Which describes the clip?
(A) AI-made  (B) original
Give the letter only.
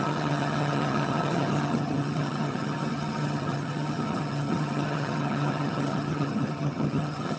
A